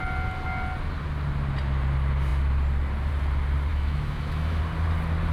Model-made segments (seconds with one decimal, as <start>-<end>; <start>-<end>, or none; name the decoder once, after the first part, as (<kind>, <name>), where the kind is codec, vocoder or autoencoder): 3.7-4.6 (autoencoder, DAC-VAE)

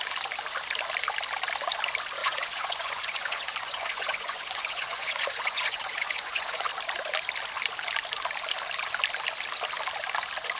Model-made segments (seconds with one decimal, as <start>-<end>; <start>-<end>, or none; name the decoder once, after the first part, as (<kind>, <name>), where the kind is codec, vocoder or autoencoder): 2.2-6.7 (vocoder, Vocos)

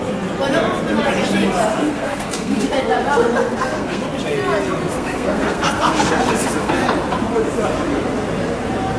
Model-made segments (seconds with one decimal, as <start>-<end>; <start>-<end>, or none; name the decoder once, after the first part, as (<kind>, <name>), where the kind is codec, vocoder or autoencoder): 1.7-2.8 (codec, SNAC); 3.4-4.1; 4.9-6.7

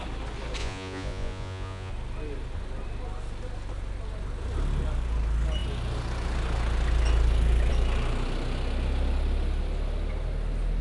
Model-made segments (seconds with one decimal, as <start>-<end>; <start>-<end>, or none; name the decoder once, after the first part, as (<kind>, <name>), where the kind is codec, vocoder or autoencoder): 0.6-1.9 (vocoder, Vocos)